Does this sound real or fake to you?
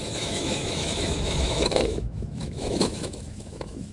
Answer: fake